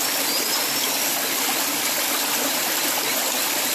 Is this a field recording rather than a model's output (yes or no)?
yes